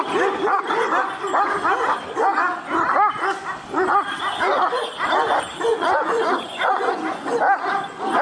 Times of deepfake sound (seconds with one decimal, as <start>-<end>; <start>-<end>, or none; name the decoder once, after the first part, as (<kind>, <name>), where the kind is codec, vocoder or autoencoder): 5.7-7.3 (vocoder, Vocos)